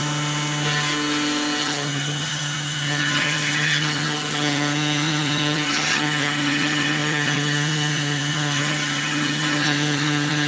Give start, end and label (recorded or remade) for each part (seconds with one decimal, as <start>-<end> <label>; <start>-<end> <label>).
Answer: 0.0-1.6 recorded; 1.6-10.5 remade